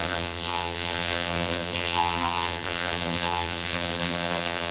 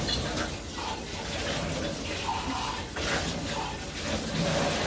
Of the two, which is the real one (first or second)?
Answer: second